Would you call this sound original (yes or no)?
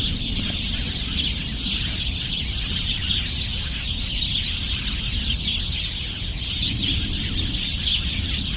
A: yes